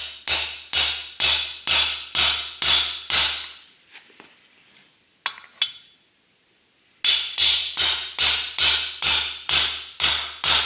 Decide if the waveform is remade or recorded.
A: recorded